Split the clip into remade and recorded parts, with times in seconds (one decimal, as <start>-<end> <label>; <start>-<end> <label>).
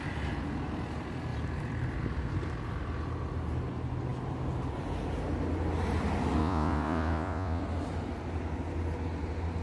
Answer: 0.0-6.4 recorded; 6.4-7.6 remade; 7.6-9.6 recorded